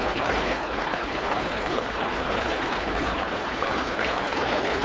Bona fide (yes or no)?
no